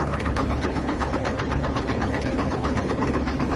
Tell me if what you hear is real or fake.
fake